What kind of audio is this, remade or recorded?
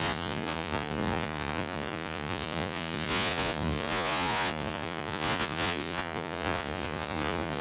remade